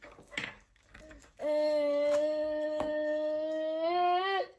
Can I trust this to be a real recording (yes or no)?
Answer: no